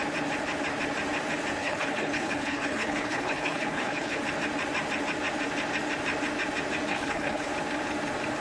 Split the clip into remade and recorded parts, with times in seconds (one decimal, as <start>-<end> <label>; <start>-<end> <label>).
0.0-1.6 recorded; 1.6-4.2 remade; 4.2-6.9 recorded; 6.9-7.5 remade; 7.5-8.4 recorded